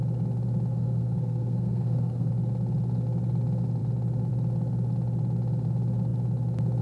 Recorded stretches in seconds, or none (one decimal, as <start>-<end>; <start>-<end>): 0.0-0.7; 2.3-6.8